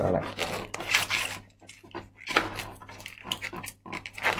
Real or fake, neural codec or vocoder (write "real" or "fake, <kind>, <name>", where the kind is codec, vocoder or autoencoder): real